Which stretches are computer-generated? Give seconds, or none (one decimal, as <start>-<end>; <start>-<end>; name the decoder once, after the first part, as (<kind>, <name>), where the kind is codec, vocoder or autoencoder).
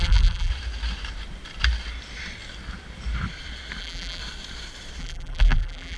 0.0-0.5 (vocoder, BigVGAN v2); 3.8-4.2; 5.0-6.0